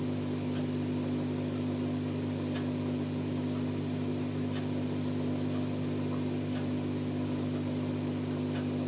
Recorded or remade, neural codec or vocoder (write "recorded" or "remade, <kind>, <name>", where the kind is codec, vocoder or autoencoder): recorded